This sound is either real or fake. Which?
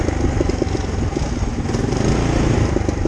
real